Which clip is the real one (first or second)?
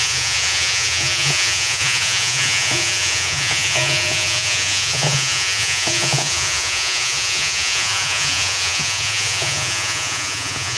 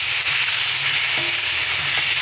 second